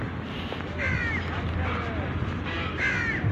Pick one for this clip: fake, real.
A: real